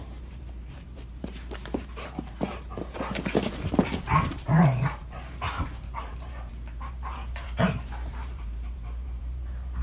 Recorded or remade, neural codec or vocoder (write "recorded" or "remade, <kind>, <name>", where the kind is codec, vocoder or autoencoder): remade, vocoder, BigVGAN v2